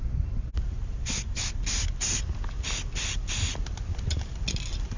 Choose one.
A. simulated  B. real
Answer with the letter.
B